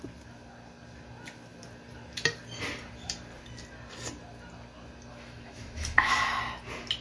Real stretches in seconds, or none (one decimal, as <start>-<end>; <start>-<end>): 0.0-5.1; 6.4-7.0